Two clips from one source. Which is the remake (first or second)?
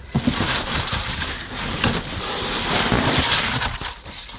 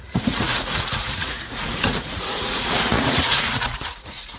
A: second